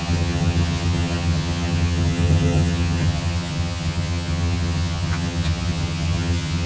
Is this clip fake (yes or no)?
yes